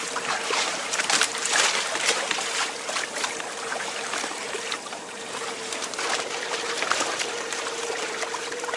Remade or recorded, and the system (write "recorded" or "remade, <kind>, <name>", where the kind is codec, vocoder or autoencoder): remade, vocoder, BigVGAN v2